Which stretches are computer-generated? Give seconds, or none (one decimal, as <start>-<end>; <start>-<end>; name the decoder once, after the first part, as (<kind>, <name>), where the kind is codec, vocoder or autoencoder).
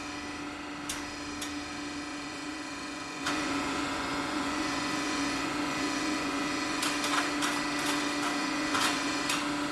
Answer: 2.1-6.8 (vocoder, Vocos); 8.4-9.2